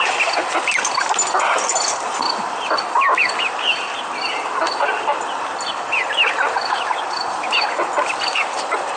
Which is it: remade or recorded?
recorded